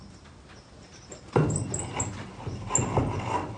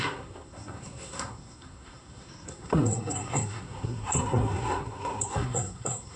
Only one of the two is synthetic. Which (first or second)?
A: second